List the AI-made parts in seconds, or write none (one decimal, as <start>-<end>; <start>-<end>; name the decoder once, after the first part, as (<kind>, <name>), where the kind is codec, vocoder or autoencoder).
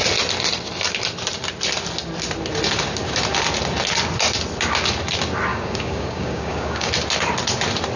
5.5-6.9 (codec, DAC)